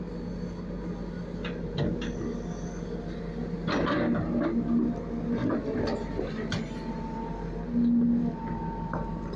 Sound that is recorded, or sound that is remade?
recorded